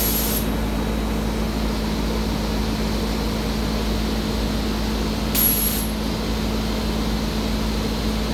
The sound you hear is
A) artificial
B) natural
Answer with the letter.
B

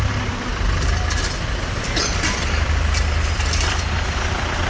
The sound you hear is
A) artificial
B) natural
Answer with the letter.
A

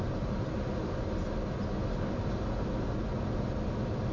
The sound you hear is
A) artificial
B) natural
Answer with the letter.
B